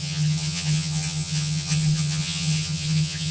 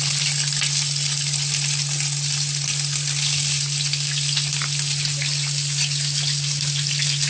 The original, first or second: second